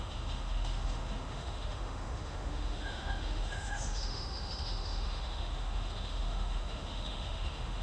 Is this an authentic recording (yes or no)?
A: no